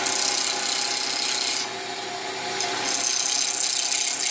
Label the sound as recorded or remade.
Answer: recorded